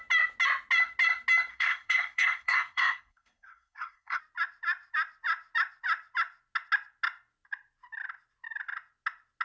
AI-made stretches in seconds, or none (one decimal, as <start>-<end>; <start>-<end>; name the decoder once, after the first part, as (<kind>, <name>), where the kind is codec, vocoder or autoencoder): 1.5-4.2 (codec, SNAC)